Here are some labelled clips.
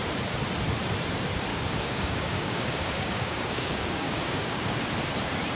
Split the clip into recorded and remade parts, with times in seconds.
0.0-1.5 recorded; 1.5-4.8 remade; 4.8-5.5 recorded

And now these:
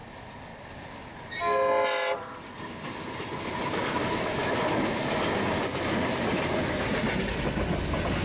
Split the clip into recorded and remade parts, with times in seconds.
0.0-8.2 recorded

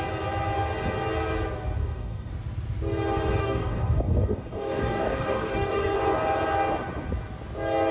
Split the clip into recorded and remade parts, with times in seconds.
0.0-1.8 recorded; 1.8-2.3 remade; 2.3-3.4 recorded; 3.4-6.0 remade; 6.0-7.9 recorded

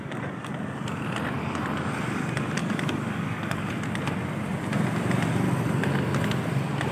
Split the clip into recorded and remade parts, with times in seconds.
0.0-0.5 remade; 0.5-2.6 recorded; 2.6-3.7 remade; 3.7-6.9 recorded

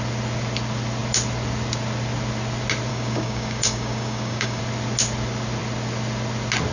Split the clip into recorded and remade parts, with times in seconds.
0.0-2.9 recorded; 2.9-4.6 remade; 4.6-6.7 recorded